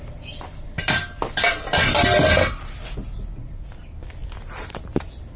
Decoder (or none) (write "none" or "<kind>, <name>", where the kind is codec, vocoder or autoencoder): vocoder, BigVGAN v2